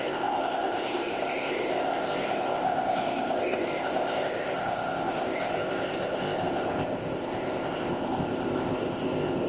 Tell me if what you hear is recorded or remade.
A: remade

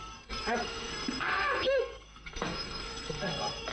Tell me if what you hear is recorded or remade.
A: remade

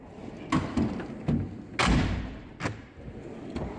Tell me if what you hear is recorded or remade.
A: recorded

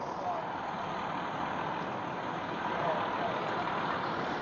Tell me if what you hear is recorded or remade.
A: recorded